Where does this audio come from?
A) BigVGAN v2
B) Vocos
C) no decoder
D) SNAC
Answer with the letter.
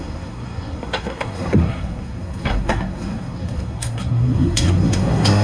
D